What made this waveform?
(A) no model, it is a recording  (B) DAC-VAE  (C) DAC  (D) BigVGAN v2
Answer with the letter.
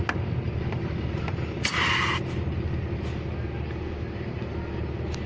A